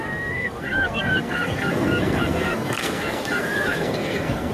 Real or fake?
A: fake